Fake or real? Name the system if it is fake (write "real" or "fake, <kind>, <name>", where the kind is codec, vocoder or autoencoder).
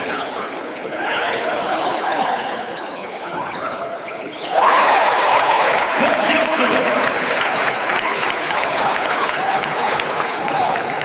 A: fake, codec, HILCodec